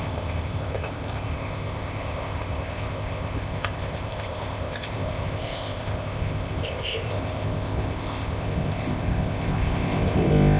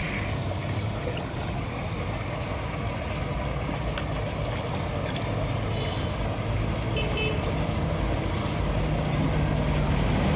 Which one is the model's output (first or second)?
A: first